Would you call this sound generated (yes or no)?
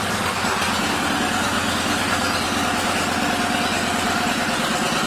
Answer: no